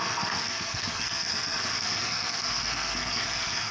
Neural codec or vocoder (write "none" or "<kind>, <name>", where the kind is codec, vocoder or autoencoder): codec, SNAC